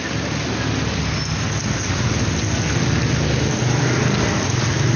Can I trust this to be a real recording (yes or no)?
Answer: yes